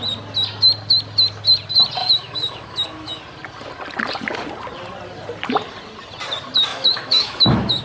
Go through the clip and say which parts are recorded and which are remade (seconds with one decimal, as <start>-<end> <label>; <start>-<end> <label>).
0.0-2.0 recorded; 2.0-3.2 remade; 3.2-6.7 recorded; 6.7-7.8 remade